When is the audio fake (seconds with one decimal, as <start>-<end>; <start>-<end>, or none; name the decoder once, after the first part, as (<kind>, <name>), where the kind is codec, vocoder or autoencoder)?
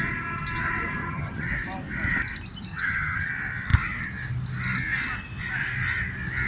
1.0-1.5 (vocoder, HiFi-GAN); 2.7-3.3